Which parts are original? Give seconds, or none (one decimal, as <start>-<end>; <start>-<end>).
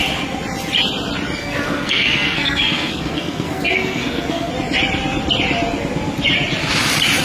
0.0-1.4; 4.5-7.2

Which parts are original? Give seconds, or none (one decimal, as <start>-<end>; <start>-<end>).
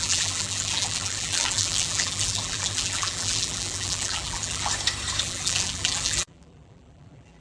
4.7-5.2